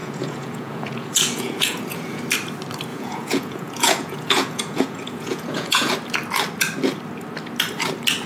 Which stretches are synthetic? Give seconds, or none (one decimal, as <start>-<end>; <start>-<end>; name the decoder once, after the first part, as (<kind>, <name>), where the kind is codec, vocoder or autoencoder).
0.0-2.2 (vocoder, Vocos); 2.9-5.9